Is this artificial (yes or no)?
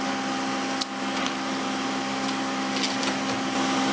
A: no